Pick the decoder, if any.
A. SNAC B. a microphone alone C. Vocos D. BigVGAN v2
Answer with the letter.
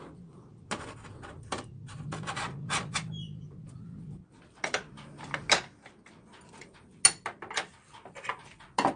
B